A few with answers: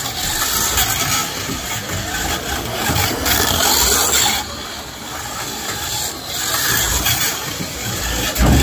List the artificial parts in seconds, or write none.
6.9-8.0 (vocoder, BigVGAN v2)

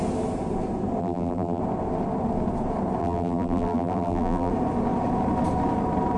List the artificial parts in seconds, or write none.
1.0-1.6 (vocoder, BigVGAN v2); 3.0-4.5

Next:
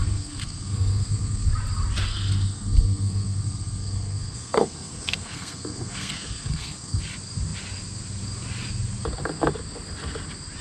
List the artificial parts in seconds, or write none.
0.0-1.5 (codec, SNAC); 2.1-7.0

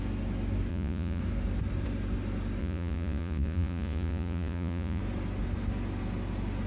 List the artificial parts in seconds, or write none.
0.7-1.2 (vocoder, Vocos); 2.6-5.0

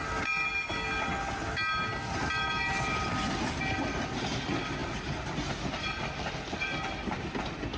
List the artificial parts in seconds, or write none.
none

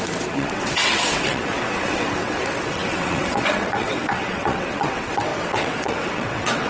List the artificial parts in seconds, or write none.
0.0-6.7 (vocoder, WaveNeXt)